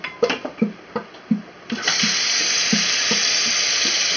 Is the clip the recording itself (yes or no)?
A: yes